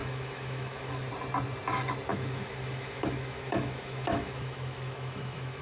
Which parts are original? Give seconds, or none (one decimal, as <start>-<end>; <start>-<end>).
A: 1.1-2.1